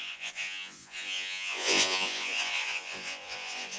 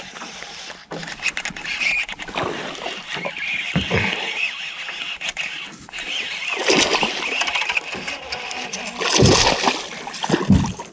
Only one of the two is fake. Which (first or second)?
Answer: first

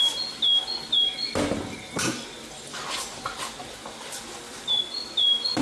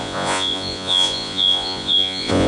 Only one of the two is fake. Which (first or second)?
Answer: second